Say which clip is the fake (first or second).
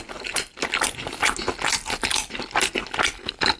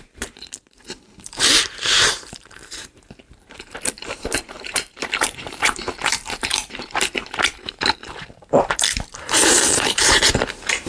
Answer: second